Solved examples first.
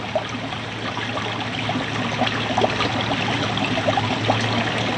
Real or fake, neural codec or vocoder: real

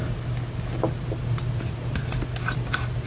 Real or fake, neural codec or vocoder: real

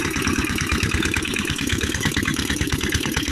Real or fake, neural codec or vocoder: fake, codec, SNAC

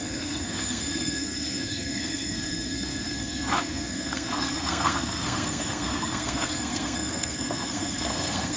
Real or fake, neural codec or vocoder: fake, codec, SNAC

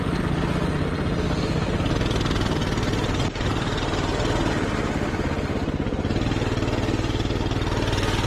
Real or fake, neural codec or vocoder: real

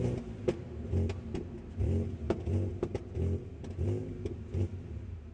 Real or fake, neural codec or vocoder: real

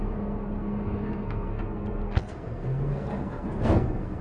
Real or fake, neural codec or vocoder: fake, codec, SNAC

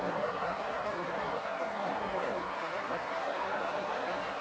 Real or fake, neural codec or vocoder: fake, codec, SNAC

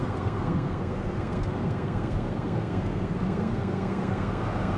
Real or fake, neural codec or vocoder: fake, codec, SNAC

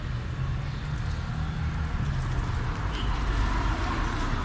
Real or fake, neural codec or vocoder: real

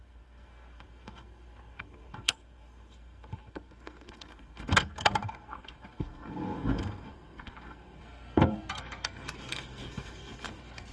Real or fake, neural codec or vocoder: fake, codec, SNAC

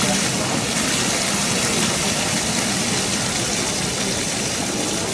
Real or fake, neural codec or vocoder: real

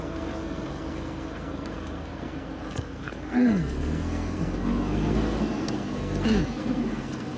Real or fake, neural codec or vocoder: fake, codec, SNAC